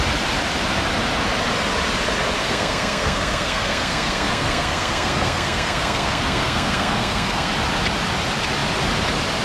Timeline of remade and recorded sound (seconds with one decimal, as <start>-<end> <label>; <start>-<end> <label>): 0.0-2.4 recorded; 2.4-7.5 remade; 7.5-9.4 recorded